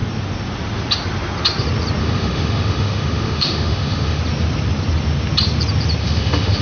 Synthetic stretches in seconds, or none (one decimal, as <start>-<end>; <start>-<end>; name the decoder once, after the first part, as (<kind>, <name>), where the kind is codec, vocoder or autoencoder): 2.0-4.2 (autoencoder, DAC-VAE); 6.0-6.6